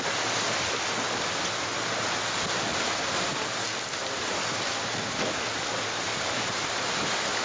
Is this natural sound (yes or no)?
yes